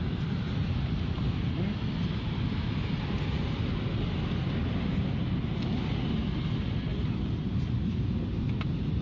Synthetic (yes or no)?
no